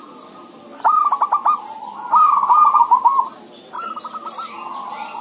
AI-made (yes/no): no